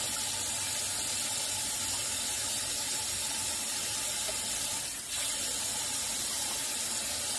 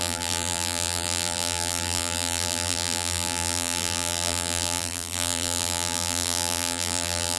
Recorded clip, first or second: first